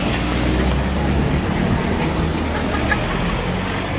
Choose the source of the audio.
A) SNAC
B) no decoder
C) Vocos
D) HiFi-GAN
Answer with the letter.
B